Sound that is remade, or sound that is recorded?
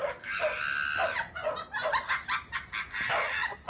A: recorded